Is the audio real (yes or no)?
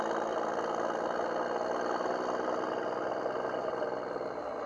yes